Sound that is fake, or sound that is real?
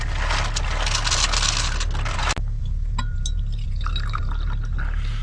real